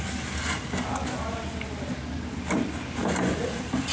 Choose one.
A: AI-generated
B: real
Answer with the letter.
B